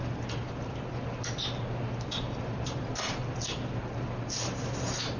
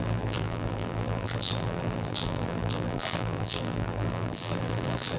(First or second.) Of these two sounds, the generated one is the second